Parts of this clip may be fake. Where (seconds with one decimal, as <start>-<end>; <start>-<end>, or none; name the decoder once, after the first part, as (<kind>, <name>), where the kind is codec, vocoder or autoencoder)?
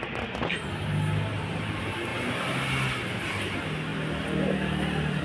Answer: none